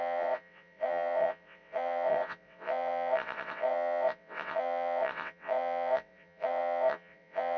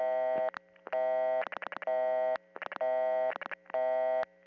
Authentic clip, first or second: second